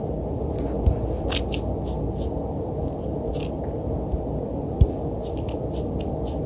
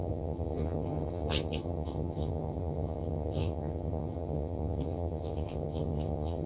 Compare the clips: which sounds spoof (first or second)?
second